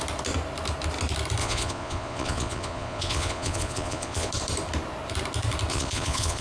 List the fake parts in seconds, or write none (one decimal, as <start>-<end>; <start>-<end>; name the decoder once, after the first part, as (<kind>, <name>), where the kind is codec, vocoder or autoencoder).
1.4-4.3 (vocoder, Vocos); 5.7-6.4